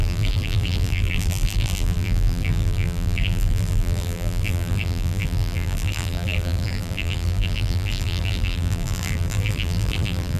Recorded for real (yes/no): no